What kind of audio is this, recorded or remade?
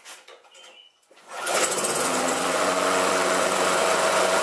remade